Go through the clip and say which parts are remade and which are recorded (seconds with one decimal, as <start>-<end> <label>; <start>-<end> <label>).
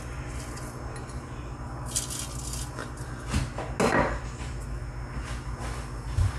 0.0-6.4 recorded